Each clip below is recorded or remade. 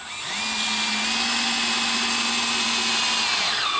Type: recorded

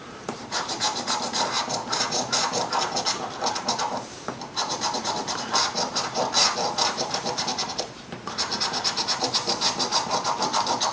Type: remade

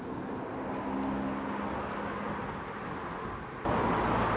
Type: recorded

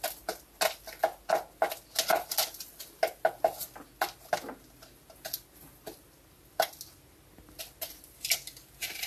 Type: recorded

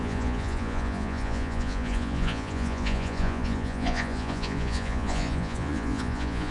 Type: remade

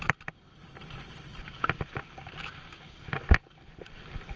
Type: recorded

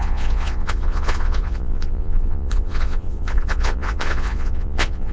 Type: remade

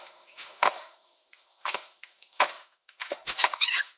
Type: remade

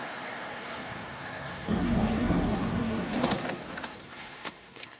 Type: remade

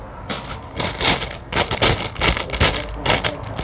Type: recorded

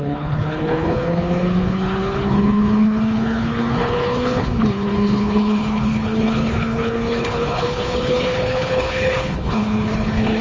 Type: remade